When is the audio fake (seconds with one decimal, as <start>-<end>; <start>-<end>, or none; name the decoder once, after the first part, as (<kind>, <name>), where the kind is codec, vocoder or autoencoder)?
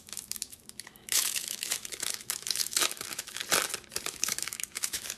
0.0-3.4 (autoencoder, DAC-VAE); 4.1-5.2